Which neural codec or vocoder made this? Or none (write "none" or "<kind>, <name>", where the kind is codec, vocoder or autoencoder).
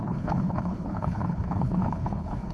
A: codec, HILCodec